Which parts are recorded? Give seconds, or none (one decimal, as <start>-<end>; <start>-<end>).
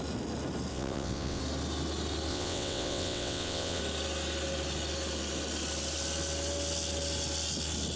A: 0.0-0.7; 1.4-2.3; 3.8-8.0